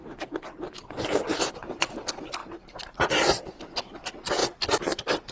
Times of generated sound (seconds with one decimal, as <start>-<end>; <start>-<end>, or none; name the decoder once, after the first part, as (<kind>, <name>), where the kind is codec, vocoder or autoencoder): 0.0-4.4 (vocoder, BigVGAN v2)